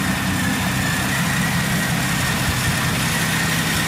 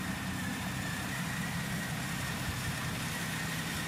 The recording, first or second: first